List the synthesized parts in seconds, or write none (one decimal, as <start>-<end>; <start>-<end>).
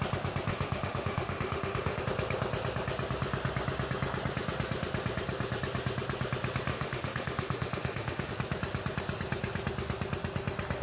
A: 0.5-2.0; 6.7-8.3